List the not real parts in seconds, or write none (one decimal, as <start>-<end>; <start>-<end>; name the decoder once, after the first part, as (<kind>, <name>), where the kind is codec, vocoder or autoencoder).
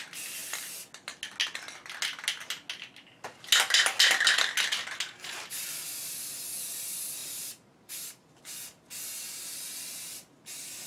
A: 7.2-8.4 (vocoder, BigVGAN v2)